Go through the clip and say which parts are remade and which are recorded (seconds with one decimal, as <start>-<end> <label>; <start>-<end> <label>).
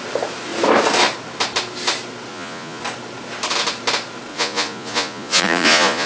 0.0-2.3 recorded; 2.3-2.8 remade; 2.8-4.3 recorded; 4.3-6.1 remade